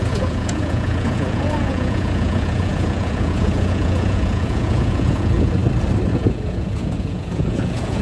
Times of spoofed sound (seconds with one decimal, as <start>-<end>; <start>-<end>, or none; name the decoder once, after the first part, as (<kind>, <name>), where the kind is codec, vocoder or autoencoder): 0.0-5.6 (vocoder, Vocos); 6.1-8.0